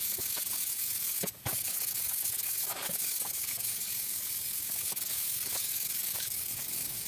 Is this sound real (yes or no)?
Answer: no